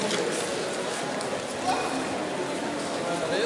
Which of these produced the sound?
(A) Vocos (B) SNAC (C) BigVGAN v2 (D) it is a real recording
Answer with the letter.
D